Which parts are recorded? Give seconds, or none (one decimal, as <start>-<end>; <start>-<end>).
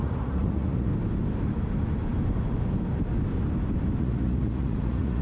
0.9-4.0